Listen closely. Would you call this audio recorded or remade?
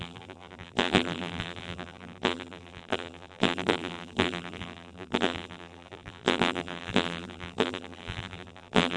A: remade